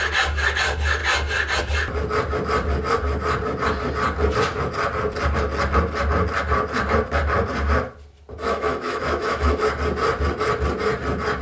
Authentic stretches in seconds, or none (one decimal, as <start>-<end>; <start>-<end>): 0.0-8.4; 9.6-11.4